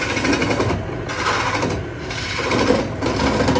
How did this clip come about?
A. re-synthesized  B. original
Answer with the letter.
B